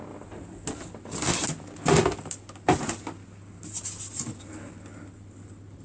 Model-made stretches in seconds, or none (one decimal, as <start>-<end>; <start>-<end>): none